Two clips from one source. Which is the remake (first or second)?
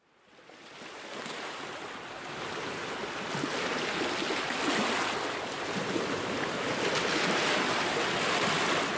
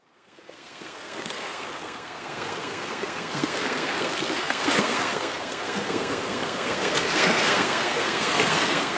second